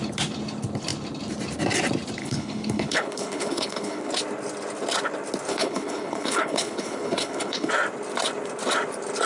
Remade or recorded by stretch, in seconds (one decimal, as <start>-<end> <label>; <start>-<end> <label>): 0.0-2.2 recorded; 2.2-4.1 remade; 4.1-5.5 recorded; 5.5-7.7 remade; 7.7-9.3 recorded